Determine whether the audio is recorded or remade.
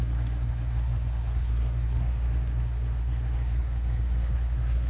remade